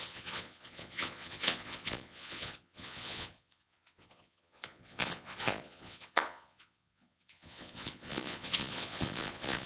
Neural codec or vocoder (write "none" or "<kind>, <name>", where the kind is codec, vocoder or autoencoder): vocoder, Vocos